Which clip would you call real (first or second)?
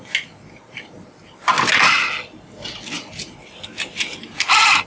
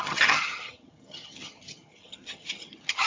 first